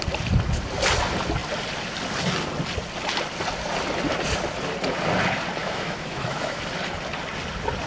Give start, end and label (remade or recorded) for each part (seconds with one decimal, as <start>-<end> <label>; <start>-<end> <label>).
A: 0.0-5.6 recorded; 5.6-6.6 remade; 6.6-7.9 recorded